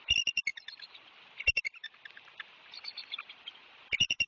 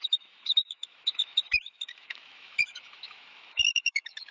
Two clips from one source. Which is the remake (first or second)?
second